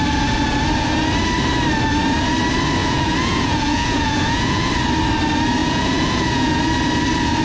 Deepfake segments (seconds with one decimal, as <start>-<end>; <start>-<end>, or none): 2.8-4.7; 5.6-6.6